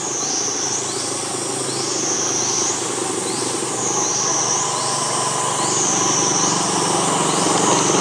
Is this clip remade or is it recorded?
recorded